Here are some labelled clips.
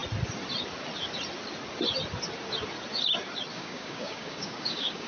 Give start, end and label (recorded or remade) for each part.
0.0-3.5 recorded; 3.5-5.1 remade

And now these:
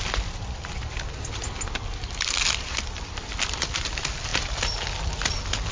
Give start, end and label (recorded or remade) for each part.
0.0-5.7 recorded

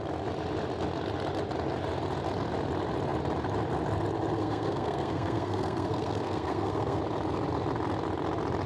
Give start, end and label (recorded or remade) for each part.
0.0-4.4 recorded; 4.4-7.0 remade; 7.0-8.7 recorded

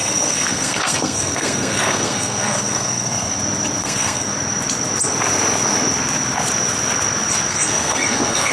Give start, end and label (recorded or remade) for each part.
0.0-3.3 remade; 3.3-3.8 recorded; 3.8-4.3 remade; 4.3-7.5 recorded; 7.5-8.5 remade